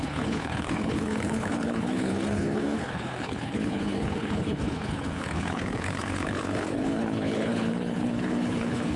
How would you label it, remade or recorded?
remade